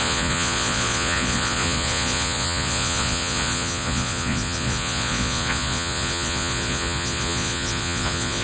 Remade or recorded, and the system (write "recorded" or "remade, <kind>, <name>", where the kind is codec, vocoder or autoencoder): remade, vocoder, Vocos